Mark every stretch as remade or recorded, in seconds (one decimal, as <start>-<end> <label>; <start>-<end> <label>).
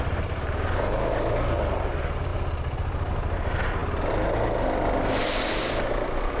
0.0-6.4 recorded